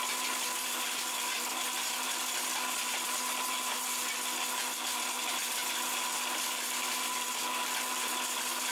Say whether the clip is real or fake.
real